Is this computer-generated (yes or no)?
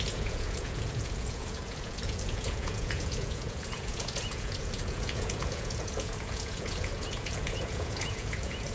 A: yes